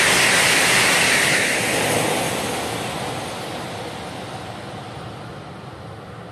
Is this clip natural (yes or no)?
yes